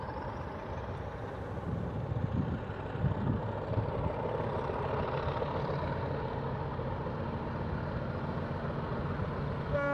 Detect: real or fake real